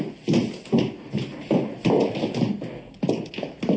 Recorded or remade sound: recorded